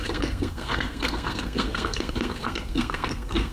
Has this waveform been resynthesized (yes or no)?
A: yes